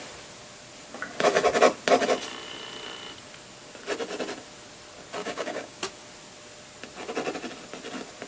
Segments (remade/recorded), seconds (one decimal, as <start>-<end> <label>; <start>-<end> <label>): 0.0-5.2 recorded; 5.2-5.8 remade; 5.8-8.3 recorded